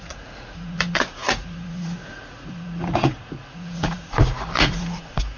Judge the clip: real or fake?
fake